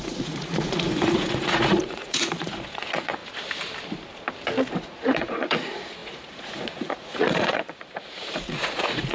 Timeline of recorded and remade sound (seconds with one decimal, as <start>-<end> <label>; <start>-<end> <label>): 0.0-3.2 remade; 3.2-4.8 recorded; 4.8-9.1 remade